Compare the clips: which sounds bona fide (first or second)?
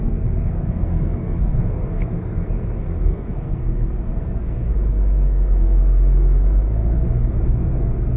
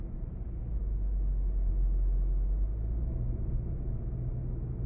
second